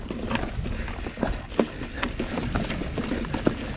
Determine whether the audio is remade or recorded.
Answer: recorded